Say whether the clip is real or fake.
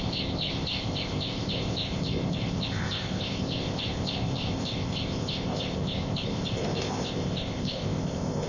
fake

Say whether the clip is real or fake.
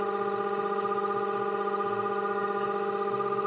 real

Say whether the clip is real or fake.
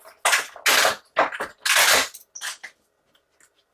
real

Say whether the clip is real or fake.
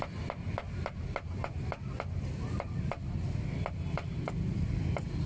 real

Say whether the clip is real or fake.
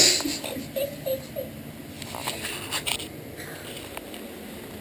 real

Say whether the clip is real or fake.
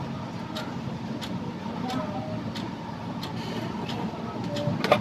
real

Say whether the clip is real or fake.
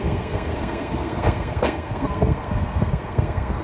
fake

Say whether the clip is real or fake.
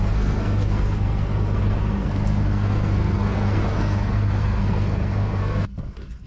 fake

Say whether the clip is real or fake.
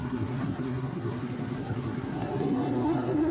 fake